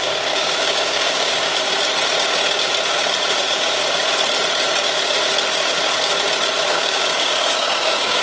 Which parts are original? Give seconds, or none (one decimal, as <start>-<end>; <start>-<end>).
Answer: 1.5-3.4; 3.8-6.7

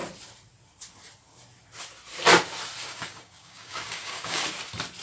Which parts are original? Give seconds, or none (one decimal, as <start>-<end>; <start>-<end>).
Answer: 0.0-2.8; 4.4-5.0

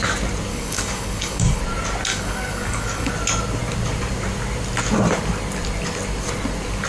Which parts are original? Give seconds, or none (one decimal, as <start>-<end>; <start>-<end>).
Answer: 0.0-0.5; 1.6-2.1; 3.1-6.9

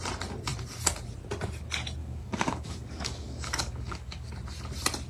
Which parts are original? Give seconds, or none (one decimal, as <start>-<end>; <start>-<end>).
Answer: 0.0-2.0; 4.3-5.1